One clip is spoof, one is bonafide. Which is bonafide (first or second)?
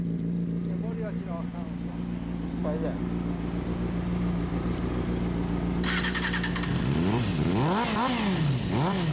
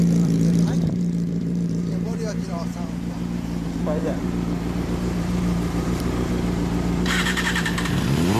first